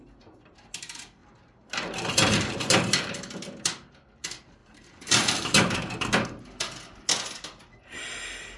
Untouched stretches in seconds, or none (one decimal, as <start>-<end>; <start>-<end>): 0.0-1.2; 3.1-4.6; 5.9-8.6